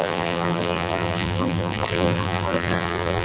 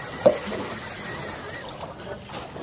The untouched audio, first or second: second